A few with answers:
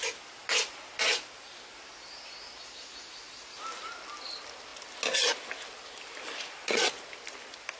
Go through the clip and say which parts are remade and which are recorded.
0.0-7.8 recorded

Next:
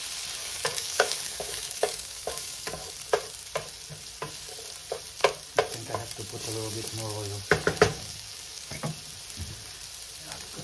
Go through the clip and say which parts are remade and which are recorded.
0.0-0.4 recorded; 0.4-2.9 remade; 2.9-7.9 recorded; 7.9-8.8 remade; 8.8-10.6 recorded

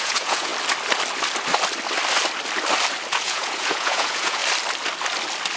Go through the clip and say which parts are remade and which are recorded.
0.0-0.5 remade; 0.5-3.2 recorded; 3.2-4.4 remade; 4.4-5.6 recorded

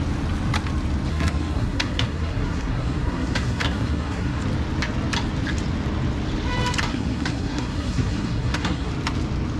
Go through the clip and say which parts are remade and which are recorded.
0.0-1.1 recorded; 1.1-4.4 remade; 4.4-6.9 recorded; 6.9-8.9 remade; 8.9-9.6 recorded

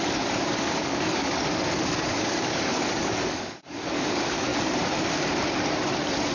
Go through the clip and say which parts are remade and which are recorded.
0.0-4.5 remade; 4.5-6.3 recorded

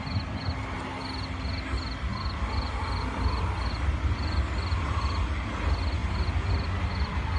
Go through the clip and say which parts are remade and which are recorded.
0.0-7.4 recorded

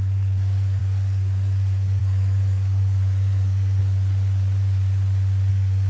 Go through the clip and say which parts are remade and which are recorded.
0.0-3.8 remade; 3.8-5.5 recorded; 5.5-5.9 remade